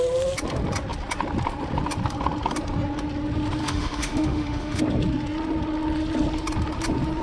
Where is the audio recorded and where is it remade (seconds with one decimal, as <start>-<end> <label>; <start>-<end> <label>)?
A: 0.0-3.6 recorded; 3.6-4.8 remade; 4.8-7.2 recorded